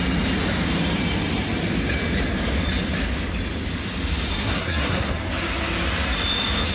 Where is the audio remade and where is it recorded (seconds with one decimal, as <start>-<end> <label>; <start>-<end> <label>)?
0.0-4.3 recorded; 4.3-5.2 remade; 5.2-6.7 recorded